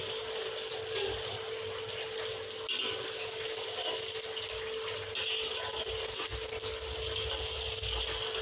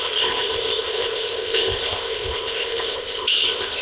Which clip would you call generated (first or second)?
second